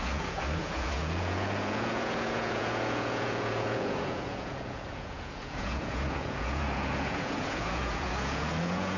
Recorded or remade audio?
remade